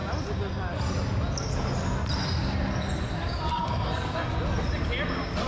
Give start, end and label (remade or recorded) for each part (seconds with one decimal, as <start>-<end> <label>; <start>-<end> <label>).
0.0-3.5 recorded; 3.5-4.3 remade; 4.3-5.5 recorded